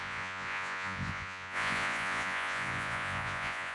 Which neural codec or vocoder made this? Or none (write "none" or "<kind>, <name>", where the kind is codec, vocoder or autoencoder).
vocoder, Vocos